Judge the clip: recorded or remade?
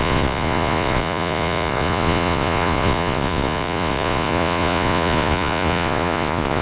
remade